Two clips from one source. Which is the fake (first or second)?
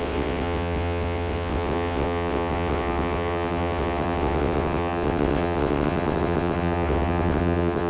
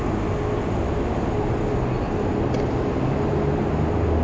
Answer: first